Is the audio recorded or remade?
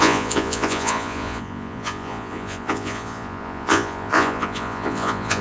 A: remade